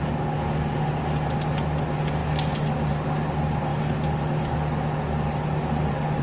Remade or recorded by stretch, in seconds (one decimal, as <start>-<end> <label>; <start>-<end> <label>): 0.0-6.2 recorded